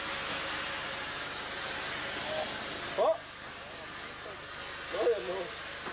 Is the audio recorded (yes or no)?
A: yes